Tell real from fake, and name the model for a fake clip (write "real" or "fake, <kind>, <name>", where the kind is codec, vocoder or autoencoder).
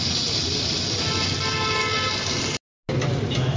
real